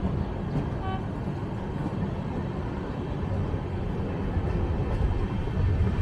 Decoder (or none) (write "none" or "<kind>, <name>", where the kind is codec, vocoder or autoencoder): none